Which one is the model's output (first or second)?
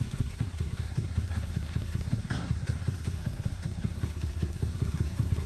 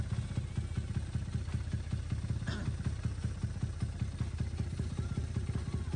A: first